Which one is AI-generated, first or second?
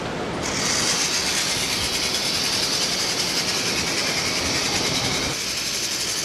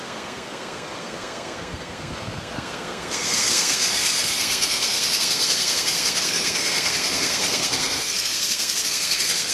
second